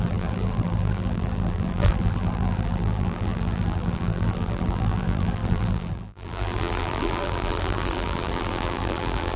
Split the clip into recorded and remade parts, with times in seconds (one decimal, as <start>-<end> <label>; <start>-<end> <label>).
0.0-9.4 remade